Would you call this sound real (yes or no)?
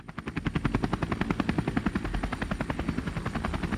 yes